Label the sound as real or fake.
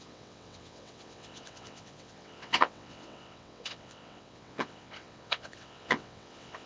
fake